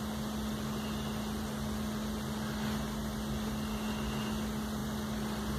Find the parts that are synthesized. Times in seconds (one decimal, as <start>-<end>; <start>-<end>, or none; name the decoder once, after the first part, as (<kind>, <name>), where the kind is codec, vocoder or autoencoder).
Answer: none